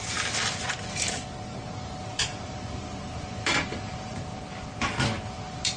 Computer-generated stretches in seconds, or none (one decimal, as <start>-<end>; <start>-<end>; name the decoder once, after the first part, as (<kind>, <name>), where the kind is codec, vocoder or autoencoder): 2.1-4.9 (vocoder, BigVGAN v2)